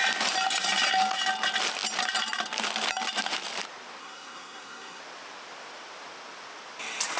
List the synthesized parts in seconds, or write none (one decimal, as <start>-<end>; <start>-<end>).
4.0-5.0